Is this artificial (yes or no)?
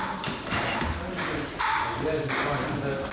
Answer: no